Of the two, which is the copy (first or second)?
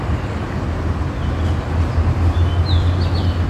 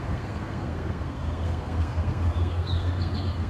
second